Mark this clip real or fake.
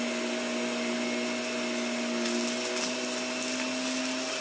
real